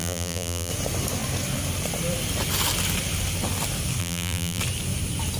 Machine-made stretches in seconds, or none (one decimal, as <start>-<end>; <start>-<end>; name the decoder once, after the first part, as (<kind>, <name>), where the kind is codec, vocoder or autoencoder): 0.0-0.7 (vocoder, BigVGAN v2); 4.0-4.6